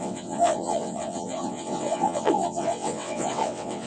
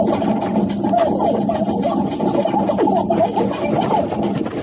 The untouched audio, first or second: second